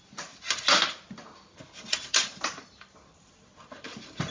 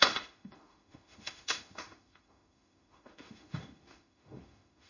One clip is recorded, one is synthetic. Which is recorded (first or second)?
first